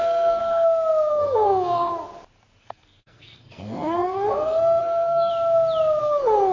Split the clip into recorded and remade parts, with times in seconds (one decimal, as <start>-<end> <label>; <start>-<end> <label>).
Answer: 0.0-0.4 remade; 0.4-1.1 recorded; 1.1-1.9 remade; 1.9-2.6 recorded; 2.6-5.3 remade; 5.3-6.0 recorded; 6.0-6.5 remade